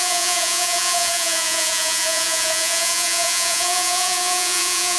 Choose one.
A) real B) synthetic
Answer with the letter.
B